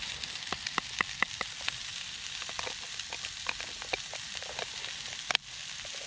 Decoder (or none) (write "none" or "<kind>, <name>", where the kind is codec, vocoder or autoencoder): none